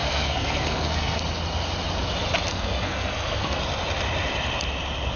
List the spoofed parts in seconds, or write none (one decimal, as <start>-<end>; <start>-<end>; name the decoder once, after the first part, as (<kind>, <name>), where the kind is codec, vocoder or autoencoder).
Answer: 0.0-1.2 (codec, SNAC); 2.5-3.6